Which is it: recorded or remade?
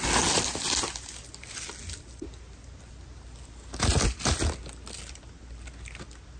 recorded